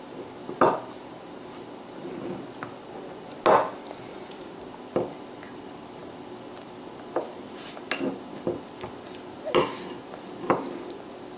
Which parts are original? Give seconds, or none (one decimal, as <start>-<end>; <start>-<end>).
0.0-4.1; 4.6-11.4

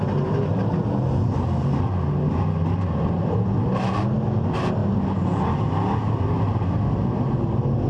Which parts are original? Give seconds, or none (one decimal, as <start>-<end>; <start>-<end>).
0.0-7.9

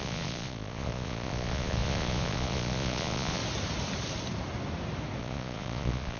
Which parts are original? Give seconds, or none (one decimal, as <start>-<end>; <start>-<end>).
3.4-5.2

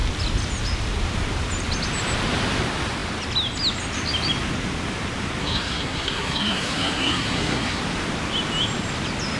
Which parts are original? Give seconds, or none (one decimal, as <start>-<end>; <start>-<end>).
0.0-5.4; 7.8-9.4

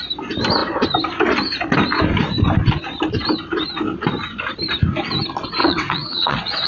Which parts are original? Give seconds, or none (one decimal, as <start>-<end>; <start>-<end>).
0.0-5.6

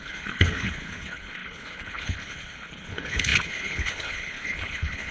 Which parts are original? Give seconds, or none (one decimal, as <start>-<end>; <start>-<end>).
none

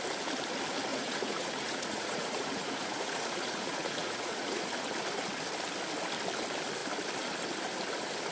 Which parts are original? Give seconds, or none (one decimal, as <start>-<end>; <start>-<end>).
0.0-0.9; 4.7-8.3